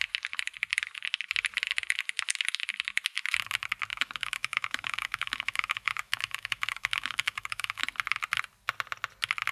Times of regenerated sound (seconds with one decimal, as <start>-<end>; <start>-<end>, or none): 3.9-7.8